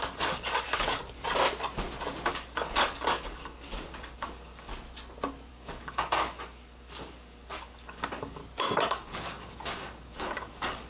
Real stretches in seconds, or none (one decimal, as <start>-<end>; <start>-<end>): 1.0-2.3; 4.7-5.5; 8.4-8.9